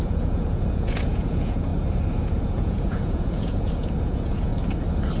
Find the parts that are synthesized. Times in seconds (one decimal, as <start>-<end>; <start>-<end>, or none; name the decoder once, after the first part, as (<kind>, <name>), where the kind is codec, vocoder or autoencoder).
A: 0.0-1.7 (vocoder, Vocos); 2.2-4.5